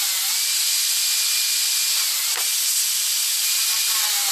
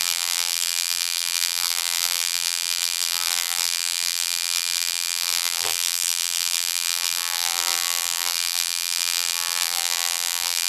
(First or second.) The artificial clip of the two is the second